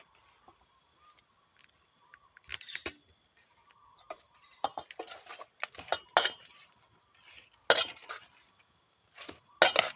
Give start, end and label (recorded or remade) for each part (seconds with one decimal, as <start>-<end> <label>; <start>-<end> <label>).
0.0-2.5 recorded; 2.5-4.4 remade; 4.4-10.0 recorded